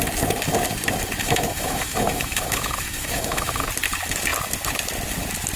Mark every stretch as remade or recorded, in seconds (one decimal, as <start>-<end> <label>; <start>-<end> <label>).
0.0-1.2 recorded; 1.2-3.7 remade; 3.7-5.6 recorded